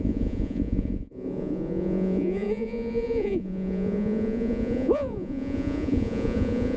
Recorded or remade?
remade